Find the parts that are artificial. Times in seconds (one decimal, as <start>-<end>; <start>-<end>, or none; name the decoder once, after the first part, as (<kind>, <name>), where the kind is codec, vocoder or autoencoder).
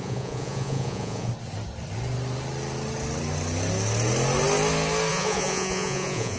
0.0-1.3 (vocoder, Vocos); 5.1-6.4